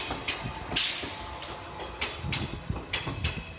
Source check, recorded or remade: recorded